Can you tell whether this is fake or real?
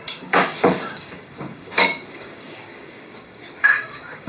fake